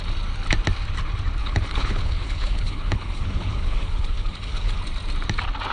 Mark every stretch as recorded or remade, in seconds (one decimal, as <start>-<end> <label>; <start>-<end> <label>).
0.0-1.4 recorded; 1.4-4.8 remade; 4.8-5.7 recorded